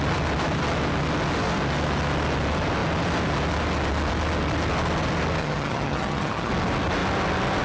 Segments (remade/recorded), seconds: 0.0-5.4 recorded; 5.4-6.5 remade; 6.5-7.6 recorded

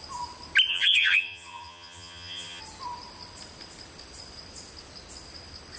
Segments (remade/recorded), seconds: 0.0-0.7 recorded; 0.7-2.6 remade; 2.6-5.8 recorded

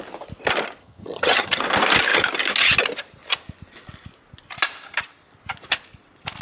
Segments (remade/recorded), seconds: 0.0-0.8 recorded; 0.8-1.6 remade; 1.6-6.4 recorded

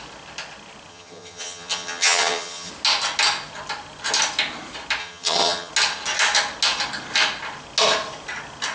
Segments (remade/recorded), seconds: 0.0-0.9 recorded; 0.9-2.7 remade; 2.7-5.0 recorded; 5.0-5.7 remade; 5.7-8.7 recorded

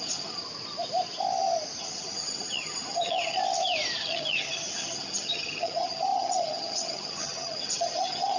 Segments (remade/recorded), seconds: 0.0-0.4 remade; 0.4-1.8 recorded; 1.8-3.4 remade; 3.4-4.0 recorded; 4.0-8.4 remade